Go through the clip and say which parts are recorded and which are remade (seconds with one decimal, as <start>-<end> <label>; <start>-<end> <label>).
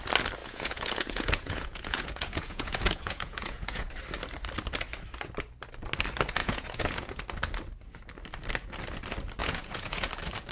0.0-0.4 recorded; 0.4-3.9 remade; 3.9-6.4 recorded; 6.4-7.2 remade; 7.2-9.4 recorded; 9.4-10.1 remade; 10.1-10.5 recorded